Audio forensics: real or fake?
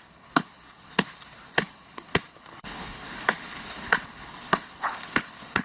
fake